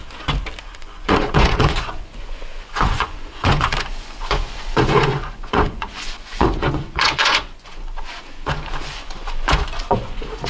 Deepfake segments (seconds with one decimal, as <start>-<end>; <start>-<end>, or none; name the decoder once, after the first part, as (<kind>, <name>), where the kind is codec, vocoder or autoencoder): 0.6-10.5 (vocoder, Vocos)